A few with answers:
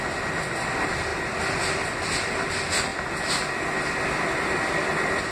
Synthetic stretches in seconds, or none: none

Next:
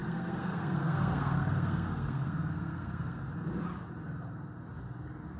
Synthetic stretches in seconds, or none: 0.0-3.2

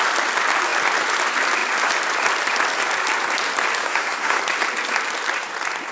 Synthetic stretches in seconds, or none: 3.8-4.4

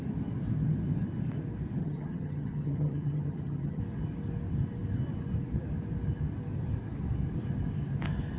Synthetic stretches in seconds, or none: 1.8-3.8